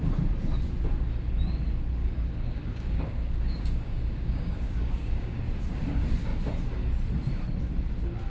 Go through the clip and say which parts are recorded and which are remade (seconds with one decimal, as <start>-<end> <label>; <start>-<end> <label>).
0.0-2.0 recorded; 2.0-5.4 remade; 5.4-8.3 recorded

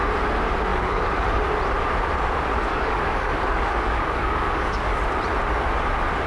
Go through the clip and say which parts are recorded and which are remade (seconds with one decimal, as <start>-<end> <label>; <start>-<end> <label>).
0.0-0.7 recorded; 0.7-1.4 remade; 1.4-2.7 recorded; 2.7-5.0 remade; 5.0-6.3 recorded

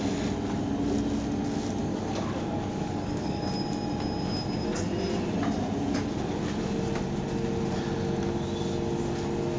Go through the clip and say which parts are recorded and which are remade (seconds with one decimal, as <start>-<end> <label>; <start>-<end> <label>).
0.0-1.8 recorded; 1.8-3.4 remade; 3.4-9.6 recorded

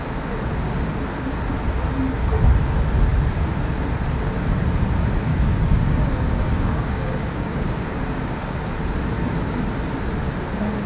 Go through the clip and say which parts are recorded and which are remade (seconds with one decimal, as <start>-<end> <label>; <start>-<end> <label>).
0.0-5.3 recorded; 5.3-8.6 remade; 8.6-10.9 recorded

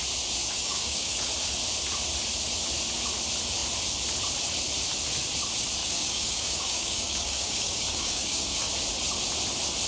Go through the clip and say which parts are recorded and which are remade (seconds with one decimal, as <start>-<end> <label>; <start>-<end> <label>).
0.0-0.4 recorded; 0.4-1.3 remade; 1.3-5.8 recorded; 5.8-8.7 remade; 8.7-9.9 recorded